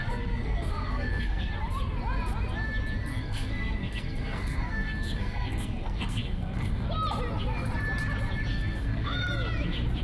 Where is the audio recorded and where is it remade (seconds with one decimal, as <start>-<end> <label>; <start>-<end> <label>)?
0.0-1.5 remade; 1.5-3.1 recorded; 3.1-6.9 remade; 6.9-8.5 recorded; 8.5-9.3 remade; 9.3-10.0 recorded

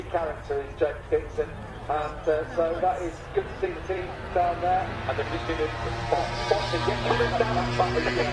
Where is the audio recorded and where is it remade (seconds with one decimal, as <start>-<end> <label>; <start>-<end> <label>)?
0.0-3.3 recorded; 3.3-4.1 remade; 4.1-8.3 recorded

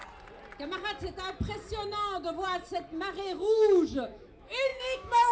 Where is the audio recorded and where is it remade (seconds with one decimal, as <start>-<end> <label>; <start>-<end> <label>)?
0.0-3.2 recorded; 3.2-5.3 remade

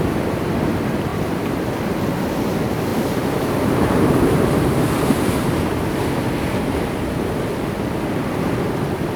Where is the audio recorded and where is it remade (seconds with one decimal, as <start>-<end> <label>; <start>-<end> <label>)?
0.0-1.1 recorded; 1.1-1.7 remade; 1.7-2.9 recorded; 2.9-6.4 remade; 6.4-9.2 recorded

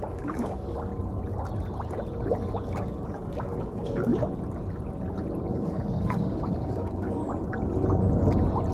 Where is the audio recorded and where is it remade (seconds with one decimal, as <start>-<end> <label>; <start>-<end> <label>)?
0.0-0.9 remade; 0.9-2.5 recorded; 2.5-4.1 remade; 4.1-5.5 recorded; 5.5-7.2 remade; 7.2-8.7 recorded